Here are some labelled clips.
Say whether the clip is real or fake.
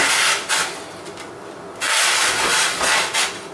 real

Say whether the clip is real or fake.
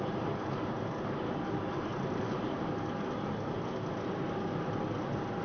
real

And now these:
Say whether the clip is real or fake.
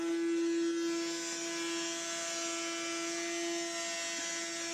real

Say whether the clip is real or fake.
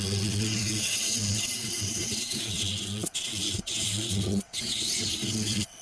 fake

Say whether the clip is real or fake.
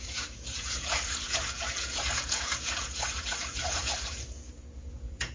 fake